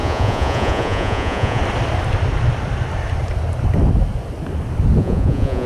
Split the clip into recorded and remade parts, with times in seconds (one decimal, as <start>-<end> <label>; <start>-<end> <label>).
0.0-1.6 remade; 1.6-5.0 recorded; 5.0-5.7 remade